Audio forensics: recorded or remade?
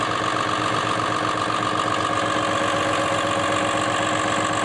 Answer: recorded